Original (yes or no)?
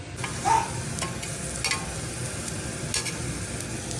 yes